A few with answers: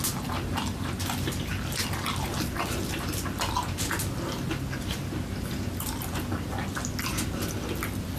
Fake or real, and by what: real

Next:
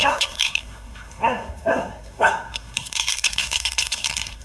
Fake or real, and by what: fake, codec, SNAC